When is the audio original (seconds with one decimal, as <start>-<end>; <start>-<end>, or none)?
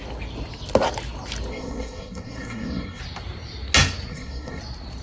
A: 0.0-1.5; 3.0-4.1; 4.6-5.0